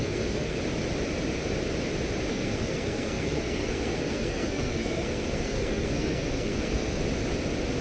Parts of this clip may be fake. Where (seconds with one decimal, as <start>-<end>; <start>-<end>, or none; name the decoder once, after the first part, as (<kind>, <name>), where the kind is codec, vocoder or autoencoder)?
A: 0.0-0.6 (codec, SNAC); 2.3-7.0